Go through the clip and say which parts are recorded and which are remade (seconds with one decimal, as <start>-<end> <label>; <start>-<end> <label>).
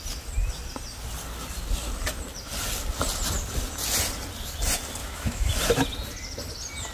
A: 0.0-5.0 recorded; 5.0-5.5 remade; 5.5-6.9 recorded